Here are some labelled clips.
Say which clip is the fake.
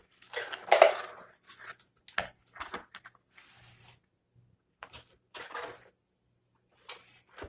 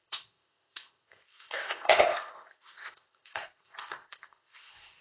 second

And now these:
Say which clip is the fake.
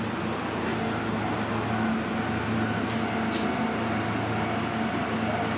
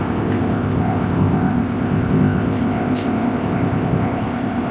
second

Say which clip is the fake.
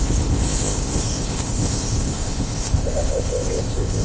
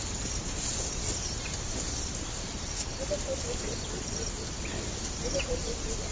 first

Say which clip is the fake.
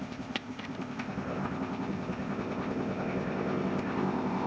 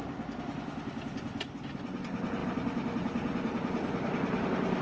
first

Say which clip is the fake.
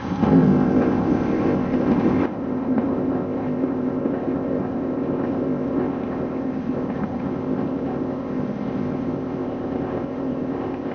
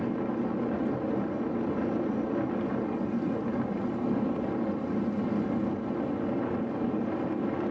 first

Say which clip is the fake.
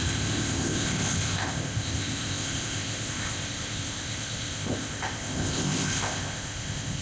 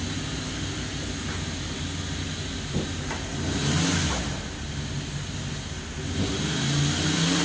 first